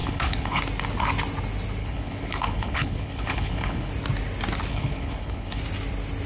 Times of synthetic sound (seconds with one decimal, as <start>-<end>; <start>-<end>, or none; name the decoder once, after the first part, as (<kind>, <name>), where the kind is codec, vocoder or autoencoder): 0.0-0.6 (codec, HILCodec); 1.8-3.9; 4.7-5.6